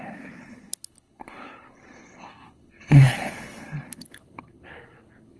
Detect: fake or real fake